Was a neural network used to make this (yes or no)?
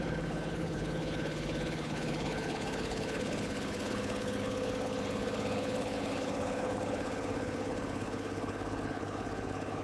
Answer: yes